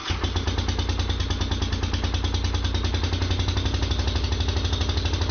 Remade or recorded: recorded